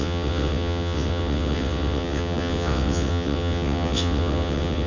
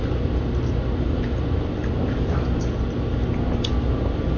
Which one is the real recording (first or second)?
second